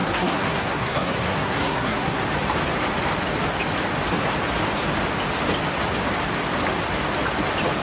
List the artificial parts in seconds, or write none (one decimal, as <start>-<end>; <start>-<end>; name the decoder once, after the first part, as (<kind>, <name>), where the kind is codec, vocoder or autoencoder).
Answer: 0.0-2.2 (codec, SNAC)